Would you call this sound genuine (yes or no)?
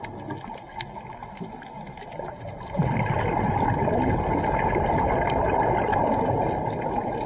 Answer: yes